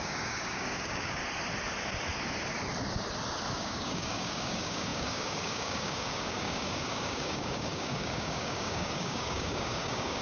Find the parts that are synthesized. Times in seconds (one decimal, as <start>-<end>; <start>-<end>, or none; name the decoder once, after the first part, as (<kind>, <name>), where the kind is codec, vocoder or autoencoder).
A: 0.0-1.2 (codec, DAC); 3.5-10.2

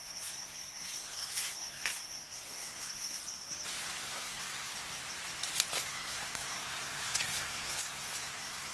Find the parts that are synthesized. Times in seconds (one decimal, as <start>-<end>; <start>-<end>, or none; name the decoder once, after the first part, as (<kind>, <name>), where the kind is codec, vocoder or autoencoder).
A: 0.0-3.2 (codec, SNAC); 4.0-4.7; 5.8-8.7

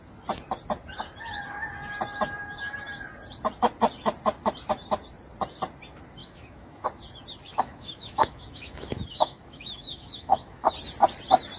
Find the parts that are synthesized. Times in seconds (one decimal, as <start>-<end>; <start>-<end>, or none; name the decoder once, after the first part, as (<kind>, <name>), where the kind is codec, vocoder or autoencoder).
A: 6.2-6.9 (autoencoder, DAC-VAE); 7.5-10.7

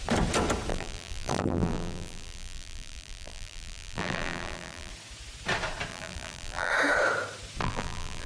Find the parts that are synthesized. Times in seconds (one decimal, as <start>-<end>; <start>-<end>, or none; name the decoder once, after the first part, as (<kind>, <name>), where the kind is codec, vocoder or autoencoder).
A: 0.7-4.9 (vocoder, BigVGAN v2); 5.9-6.7; 7.6-8.3